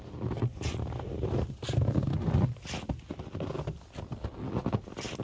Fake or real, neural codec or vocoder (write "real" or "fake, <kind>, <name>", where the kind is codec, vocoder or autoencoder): real